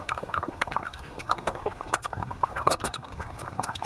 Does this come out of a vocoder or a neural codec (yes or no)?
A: yes